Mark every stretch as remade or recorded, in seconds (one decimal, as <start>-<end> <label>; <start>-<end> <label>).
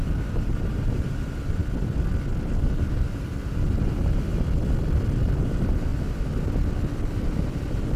0.0-1.6 remade; 1.6-2.4 recorded; 2.4-4.3 remade; 4.3-5.4 recorded; 5.4-5.9 remade; 5.9-7.2 recorded; 7.2-8.0 remade